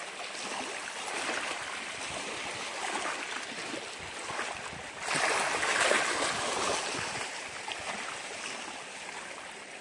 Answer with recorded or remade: recorded